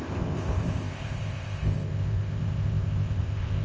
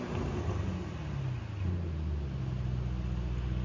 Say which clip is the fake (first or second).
first